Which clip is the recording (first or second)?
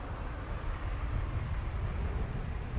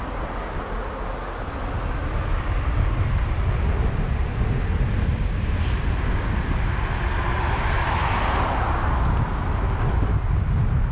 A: second